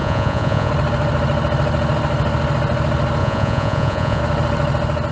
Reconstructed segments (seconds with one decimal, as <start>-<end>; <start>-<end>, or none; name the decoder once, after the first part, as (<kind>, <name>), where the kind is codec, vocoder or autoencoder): 0.0-0.7 (vocoder, Vocos); 3.2-4.2